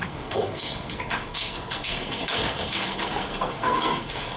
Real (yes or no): no